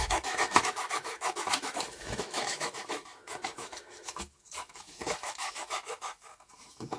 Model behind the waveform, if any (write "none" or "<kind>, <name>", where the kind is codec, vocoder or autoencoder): autoencoder, DAC-VAE